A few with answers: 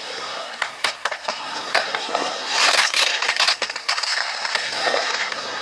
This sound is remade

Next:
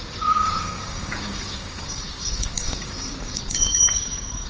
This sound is remade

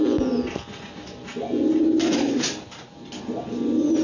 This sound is recorded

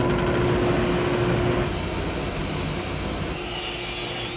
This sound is recorded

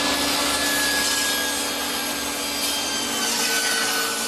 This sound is recorded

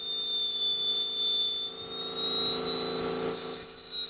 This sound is recorded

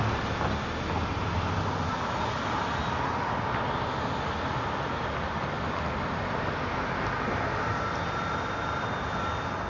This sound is recorded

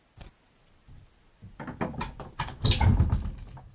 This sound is recorded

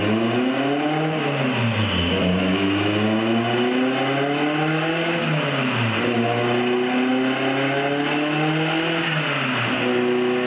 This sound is recorded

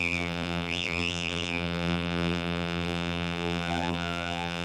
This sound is remade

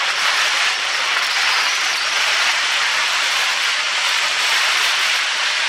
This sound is recorded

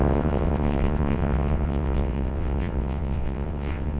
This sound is remade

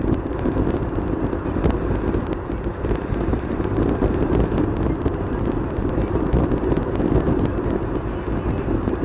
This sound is remade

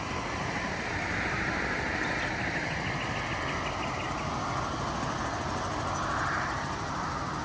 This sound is recorded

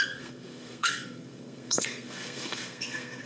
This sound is remade